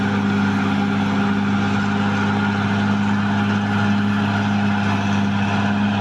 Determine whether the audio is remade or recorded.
recorded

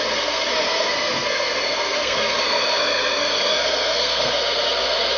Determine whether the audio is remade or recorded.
remade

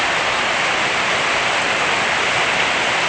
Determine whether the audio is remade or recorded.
recorded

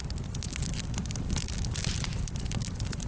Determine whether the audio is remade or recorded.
recorded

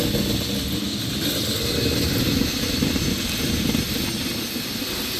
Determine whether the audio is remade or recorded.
recorded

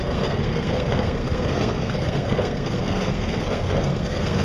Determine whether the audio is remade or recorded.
remade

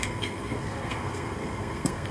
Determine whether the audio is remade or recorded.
remade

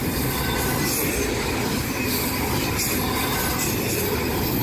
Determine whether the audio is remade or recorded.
recorded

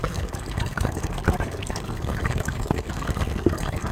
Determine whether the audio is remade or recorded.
remade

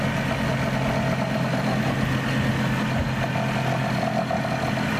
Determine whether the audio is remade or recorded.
recorded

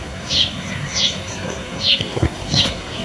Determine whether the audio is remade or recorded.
remade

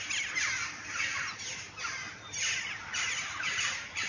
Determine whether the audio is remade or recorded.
recorded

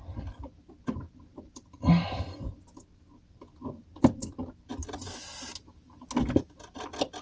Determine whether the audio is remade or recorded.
recorded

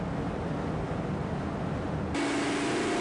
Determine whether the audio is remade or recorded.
recorded